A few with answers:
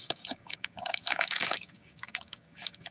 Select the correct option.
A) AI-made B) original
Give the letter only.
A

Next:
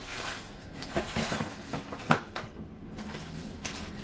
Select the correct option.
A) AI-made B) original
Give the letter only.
A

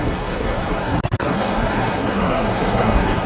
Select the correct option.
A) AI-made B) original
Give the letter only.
A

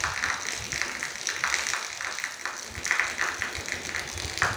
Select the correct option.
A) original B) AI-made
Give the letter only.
A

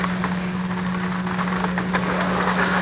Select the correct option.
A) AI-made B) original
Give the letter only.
B